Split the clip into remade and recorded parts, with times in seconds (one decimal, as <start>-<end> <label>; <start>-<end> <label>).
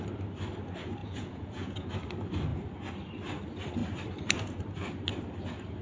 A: 0.0-1.0 recorded; 1.0-1.9 remade; 1.9-5.8 recorded